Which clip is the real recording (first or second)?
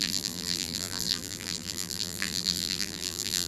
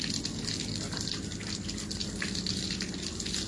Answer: second